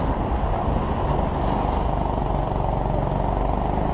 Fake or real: real